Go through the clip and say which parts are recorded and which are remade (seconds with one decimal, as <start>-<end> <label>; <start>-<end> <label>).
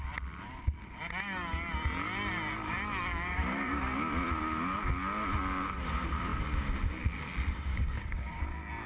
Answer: 0.0-3.1 recorded; 3.1-3.8 remade; 3.8-7.7 recorded; 7.7-8.4 remade; 8.4-8.9 recorded